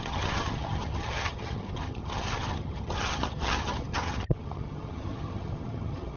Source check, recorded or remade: remade